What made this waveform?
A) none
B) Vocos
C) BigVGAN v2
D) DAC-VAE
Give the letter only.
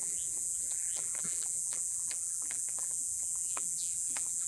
C